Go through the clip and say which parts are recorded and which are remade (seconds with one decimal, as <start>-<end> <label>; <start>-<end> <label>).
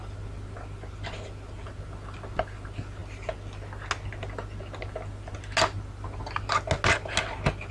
0.0-7.7 recorded